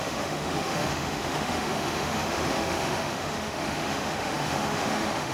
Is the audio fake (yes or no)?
yes